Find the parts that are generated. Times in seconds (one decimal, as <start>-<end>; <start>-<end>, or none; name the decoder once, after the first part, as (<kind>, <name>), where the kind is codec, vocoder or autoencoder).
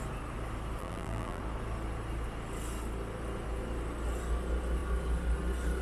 0.8-1.4 (vocoder, BigVGAN v2)